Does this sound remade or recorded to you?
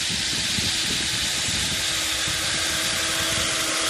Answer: recorded